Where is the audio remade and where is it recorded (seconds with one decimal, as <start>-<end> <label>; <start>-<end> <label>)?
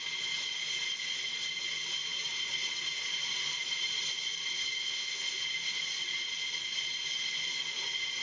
0.0-4.8 recorded; 4.8-5.4 remade; 5.4-8.2 recorded